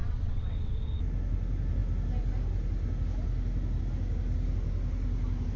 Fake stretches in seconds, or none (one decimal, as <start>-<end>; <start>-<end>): 0.0-1.0